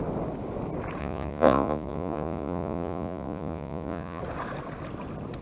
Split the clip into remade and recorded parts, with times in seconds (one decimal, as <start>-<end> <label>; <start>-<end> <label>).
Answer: 0.0-1.0 recorded; 1.0-4.2 remade; 4.2-5.4 recorded